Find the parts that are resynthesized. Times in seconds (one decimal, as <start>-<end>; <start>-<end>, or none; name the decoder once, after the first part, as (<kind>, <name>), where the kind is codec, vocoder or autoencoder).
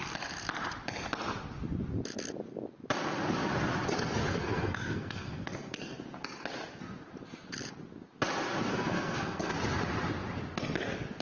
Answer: 4.3-6.0 (codec, SNAC); 8.7-9.5